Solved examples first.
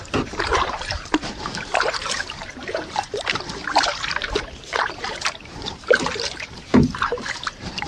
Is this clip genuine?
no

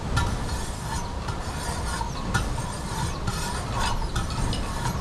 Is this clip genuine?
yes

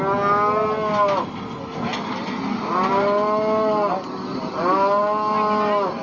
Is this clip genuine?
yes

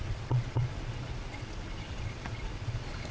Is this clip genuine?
no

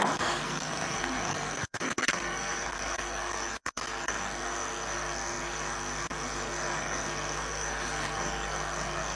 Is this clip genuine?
no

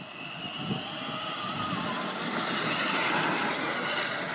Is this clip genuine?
yes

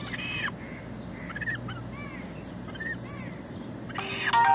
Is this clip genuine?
yes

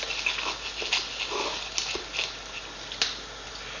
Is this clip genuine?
yes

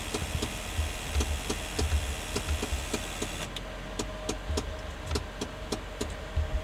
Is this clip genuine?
yes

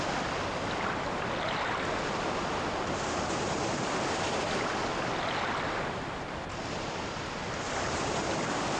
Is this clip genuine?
yes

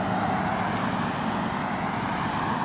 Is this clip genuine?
yes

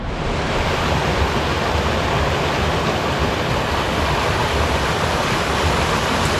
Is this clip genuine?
yes